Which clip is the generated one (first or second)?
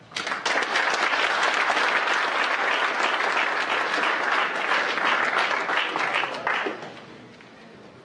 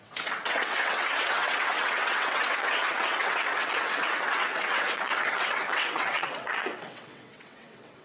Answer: second